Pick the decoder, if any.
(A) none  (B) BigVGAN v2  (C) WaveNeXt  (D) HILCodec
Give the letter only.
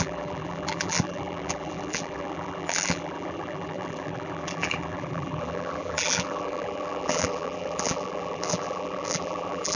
B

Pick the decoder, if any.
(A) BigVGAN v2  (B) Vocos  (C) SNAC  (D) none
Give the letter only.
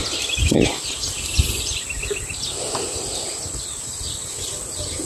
A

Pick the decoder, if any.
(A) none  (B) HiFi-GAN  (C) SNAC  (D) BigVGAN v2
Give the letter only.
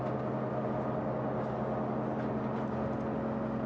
A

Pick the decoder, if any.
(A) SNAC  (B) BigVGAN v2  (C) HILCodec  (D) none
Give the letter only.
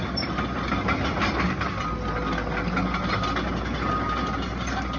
D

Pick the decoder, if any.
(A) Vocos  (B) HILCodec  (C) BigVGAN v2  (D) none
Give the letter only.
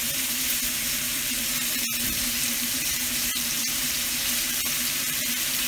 C